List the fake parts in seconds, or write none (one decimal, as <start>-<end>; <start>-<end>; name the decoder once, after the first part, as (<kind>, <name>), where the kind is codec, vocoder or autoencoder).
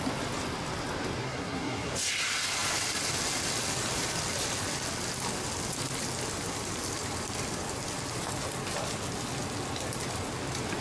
1.2-1.9 (codec, SNAC)